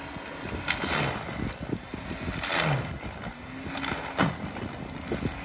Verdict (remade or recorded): recorded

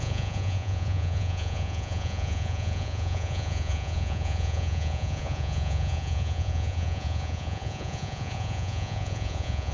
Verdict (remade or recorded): remade